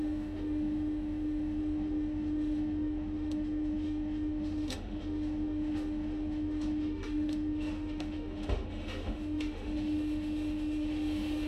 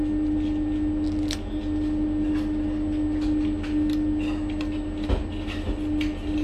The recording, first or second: second